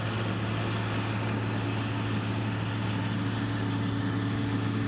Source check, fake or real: real